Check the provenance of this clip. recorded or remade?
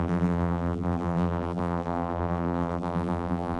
remade